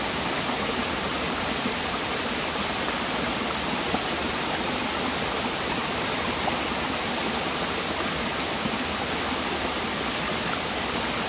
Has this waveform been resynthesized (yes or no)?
no